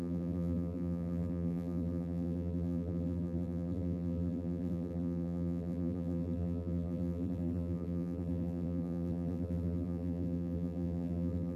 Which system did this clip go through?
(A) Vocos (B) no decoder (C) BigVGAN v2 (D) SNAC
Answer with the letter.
C